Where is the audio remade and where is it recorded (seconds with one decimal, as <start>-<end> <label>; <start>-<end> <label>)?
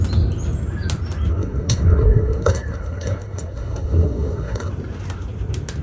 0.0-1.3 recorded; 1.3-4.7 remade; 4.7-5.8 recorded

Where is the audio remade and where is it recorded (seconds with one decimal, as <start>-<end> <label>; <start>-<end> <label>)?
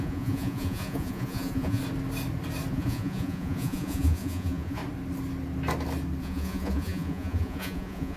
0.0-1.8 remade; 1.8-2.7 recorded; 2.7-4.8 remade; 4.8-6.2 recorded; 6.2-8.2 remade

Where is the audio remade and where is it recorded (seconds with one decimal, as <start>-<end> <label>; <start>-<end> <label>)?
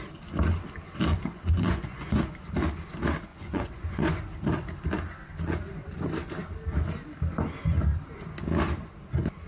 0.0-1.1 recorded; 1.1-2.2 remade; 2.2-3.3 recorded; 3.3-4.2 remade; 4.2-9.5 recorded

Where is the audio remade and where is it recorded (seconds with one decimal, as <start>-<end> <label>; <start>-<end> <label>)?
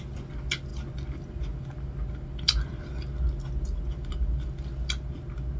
0.0-5.6 recorded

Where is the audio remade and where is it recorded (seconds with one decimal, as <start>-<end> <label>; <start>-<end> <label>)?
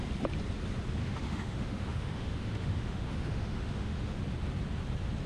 0.0-1.0 recorded; 1.0-4.2 remade; 4.2-5.3 recorded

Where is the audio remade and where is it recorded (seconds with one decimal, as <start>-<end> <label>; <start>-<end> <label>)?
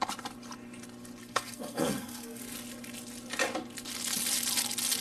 0.0-1.2 recorded; 1.2-2.4 remade; 2.4-5.0 recorded